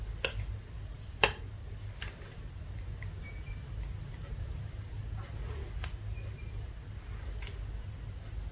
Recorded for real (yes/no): yes